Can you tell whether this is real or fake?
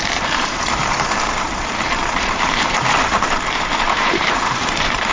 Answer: fake